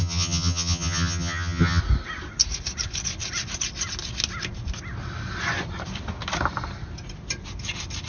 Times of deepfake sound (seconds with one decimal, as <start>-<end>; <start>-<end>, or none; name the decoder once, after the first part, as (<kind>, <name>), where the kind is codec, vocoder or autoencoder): 0.0-1.8 (vocoder, HiFi-GAN)